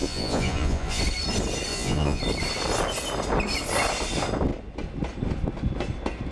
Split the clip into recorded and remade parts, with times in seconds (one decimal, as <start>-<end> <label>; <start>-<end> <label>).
0.0-1.0 remade; 1.0-1.7 recorded; 1.7-2.2 remade; 2.2-6.3 recorded